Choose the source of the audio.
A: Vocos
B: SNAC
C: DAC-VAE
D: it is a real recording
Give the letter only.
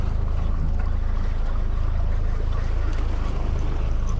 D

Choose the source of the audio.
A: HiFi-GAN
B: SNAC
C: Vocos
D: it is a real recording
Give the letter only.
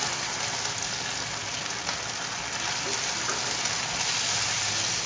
D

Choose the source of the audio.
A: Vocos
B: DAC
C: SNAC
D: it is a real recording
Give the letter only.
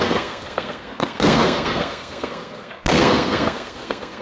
C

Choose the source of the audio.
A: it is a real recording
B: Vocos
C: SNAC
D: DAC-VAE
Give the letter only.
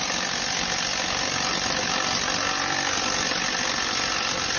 A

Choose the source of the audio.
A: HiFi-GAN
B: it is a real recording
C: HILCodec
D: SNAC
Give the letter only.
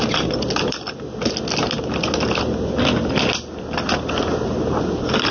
B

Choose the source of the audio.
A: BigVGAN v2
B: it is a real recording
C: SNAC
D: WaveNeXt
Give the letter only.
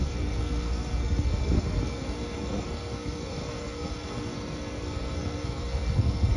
C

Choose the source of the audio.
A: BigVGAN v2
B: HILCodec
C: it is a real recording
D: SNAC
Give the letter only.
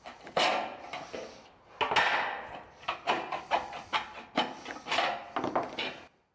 C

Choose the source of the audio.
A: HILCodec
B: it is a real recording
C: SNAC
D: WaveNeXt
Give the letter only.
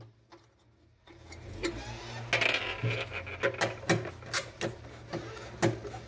B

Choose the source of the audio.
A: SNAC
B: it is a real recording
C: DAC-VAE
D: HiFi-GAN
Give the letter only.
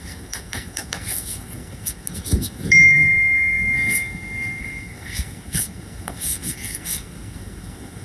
A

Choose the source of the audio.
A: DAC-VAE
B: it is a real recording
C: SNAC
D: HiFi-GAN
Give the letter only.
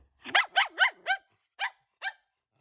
B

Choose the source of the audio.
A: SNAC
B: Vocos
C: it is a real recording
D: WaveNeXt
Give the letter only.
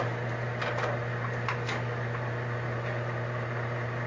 C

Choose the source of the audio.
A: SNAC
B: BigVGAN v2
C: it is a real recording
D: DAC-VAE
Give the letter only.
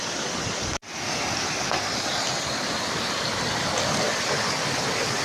C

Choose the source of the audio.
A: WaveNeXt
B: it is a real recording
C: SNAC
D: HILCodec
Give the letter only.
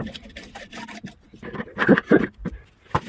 B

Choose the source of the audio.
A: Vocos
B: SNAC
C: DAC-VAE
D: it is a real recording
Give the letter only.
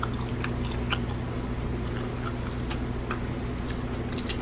D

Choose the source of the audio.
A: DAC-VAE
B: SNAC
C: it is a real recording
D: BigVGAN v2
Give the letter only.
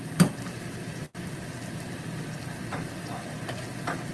C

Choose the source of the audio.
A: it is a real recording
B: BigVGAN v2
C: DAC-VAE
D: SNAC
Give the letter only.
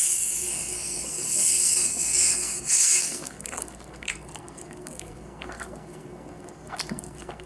D